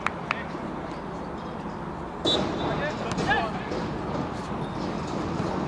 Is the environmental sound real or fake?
real